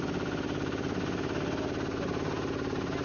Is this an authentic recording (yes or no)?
yes